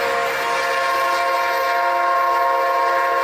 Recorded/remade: recorded